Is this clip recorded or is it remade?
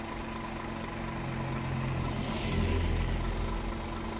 recorded